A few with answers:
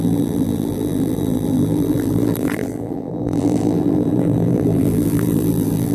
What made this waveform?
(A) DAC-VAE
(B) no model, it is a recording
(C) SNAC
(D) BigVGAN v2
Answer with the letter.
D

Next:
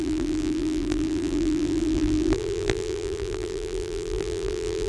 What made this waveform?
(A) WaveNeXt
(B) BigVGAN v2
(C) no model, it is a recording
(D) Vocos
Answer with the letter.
B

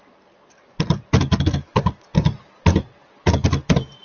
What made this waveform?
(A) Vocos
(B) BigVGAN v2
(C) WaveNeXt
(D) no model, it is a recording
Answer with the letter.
D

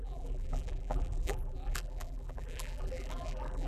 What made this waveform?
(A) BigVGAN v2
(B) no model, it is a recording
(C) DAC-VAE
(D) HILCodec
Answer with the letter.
A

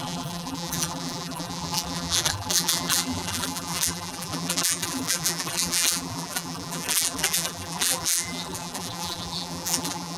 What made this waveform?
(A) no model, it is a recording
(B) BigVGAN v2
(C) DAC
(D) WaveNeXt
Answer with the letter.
B